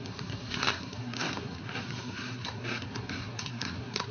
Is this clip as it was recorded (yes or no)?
no